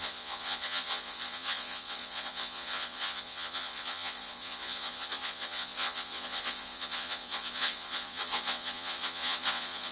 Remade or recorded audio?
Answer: remade